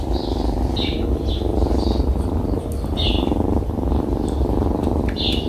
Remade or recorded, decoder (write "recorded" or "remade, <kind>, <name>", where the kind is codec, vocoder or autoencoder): recorded